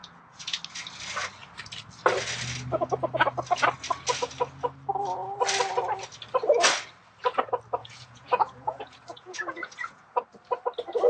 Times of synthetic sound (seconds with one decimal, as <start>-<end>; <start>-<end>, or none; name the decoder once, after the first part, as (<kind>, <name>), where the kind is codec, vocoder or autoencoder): 0.0-0.6 (vocoder, Vocos); 7.8-10.2